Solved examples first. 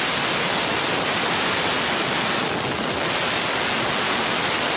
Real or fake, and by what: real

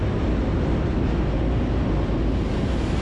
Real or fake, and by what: real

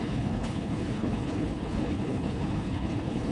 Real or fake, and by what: fake, codec, HILCodec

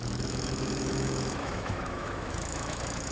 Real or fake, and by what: fake, autoencoder, DAC-VAE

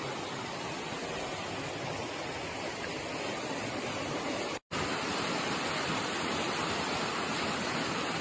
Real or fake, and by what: real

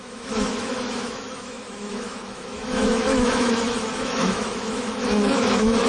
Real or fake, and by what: fake, autoencoder, DAC-VAE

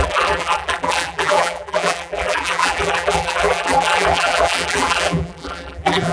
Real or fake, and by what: fake, vocoder, BigVGAN v2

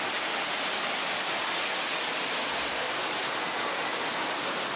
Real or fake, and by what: real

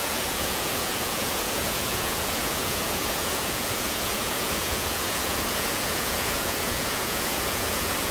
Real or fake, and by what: fake, vocoder, Vocos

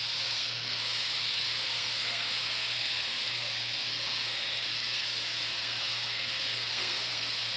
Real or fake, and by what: fake, codec, SNAC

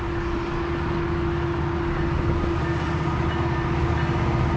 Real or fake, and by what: real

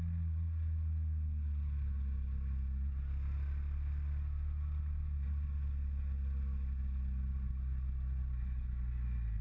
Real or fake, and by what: real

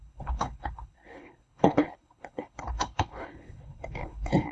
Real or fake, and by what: fake, codec, HILCodec